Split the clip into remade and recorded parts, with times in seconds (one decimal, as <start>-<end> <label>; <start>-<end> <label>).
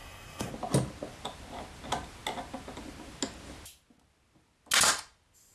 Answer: 0.0-0.5 remade; 0.5-5.5 recorded